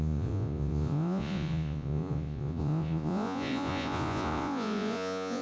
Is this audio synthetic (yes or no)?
yes